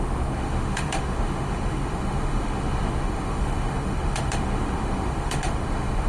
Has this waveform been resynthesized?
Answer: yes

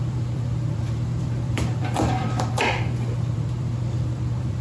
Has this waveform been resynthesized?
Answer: yes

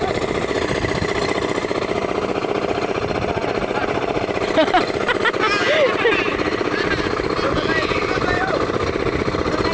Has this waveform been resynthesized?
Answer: no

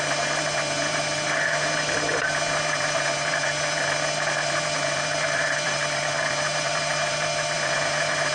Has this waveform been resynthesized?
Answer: yes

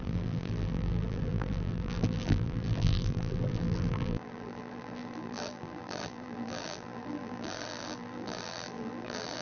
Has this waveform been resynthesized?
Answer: yes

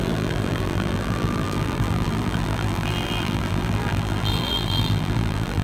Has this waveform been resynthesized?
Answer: yes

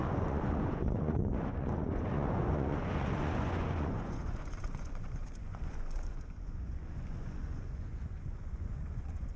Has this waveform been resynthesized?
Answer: yes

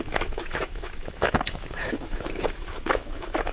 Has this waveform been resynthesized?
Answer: yes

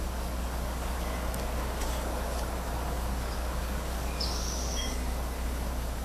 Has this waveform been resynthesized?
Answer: yes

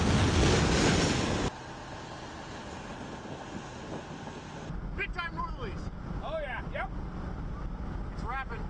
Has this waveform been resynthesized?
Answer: no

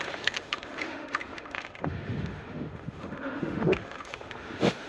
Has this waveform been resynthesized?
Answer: yes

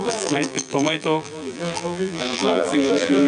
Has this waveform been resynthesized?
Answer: yes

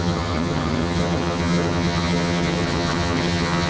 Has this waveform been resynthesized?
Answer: yes